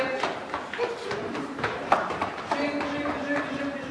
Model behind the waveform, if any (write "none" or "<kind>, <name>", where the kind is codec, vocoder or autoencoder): vocoder, BigVGAN v2